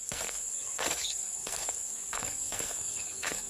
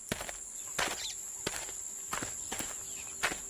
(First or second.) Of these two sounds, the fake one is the first